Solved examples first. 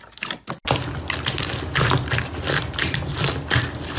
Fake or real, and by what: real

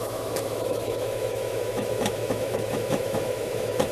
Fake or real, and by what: fake, autoencoder, DAC-VAE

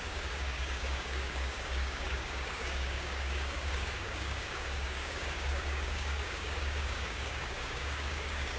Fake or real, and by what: fake, codec, DAC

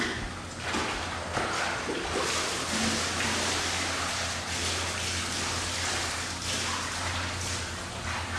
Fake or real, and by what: real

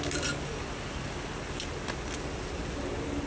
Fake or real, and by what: real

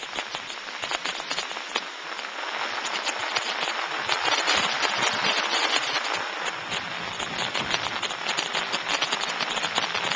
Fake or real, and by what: real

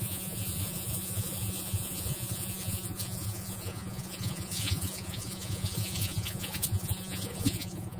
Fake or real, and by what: fake, vocoder, Vocos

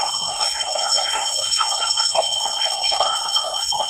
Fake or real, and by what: fake, codec, SNAC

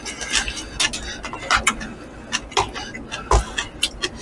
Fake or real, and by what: real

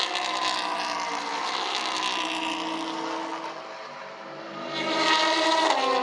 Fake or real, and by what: real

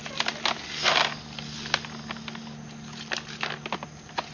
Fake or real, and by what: real